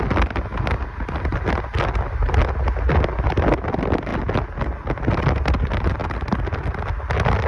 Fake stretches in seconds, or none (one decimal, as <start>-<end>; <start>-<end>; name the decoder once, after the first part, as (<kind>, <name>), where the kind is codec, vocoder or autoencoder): none